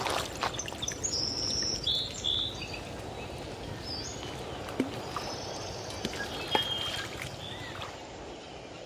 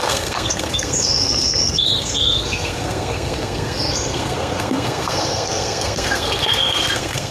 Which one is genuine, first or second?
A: first